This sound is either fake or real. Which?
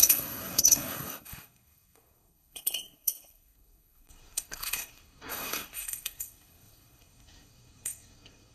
fake